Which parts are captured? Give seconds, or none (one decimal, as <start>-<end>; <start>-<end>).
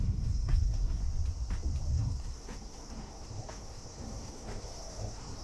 1.0-1.9